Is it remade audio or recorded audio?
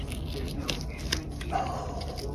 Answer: recorded